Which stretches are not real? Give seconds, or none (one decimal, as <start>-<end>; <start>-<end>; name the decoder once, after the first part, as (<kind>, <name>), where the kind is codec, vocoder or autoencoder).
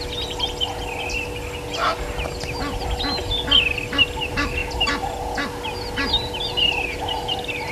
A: none